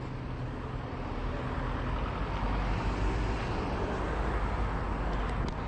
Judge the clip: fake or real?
real